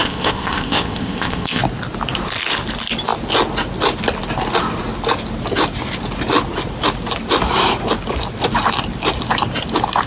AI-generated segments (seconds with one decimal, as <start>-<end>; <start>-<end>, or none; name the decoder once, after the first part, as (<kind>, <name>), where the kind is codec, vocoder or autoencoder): 0.0-1.6 (codec, ZipCodec)